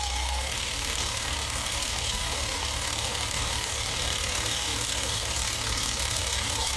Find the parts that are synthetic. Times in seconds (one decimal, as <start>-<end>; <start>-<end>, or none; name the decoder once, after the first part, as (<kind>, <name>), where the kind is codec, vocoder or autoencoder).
0.0-6.8 (codec, DAC)